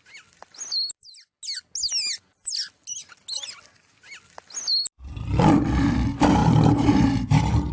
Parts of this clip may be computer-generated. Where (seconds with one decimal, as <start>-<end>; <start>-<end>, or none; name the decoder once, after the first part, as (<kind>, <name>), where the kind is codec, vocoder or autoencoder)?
6.4-7.7 (vocoder, BigVGAN v2)